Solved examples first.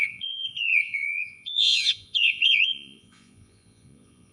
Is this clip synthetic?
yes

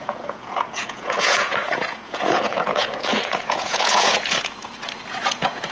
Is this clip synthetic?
yes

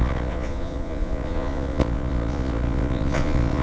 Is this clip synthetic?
yes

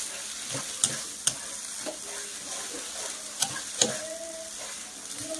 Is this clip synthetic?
no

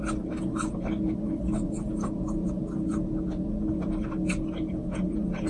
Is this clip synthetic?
no